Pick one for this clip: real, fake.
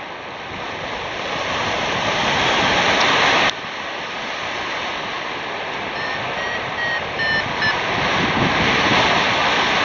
real